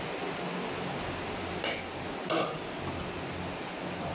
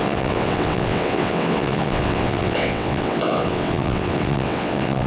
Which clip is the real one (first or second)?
first